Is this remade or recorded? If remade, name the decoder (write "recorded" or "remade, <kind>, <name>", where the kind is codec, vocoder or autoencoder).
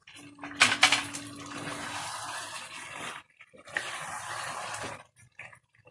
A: recorded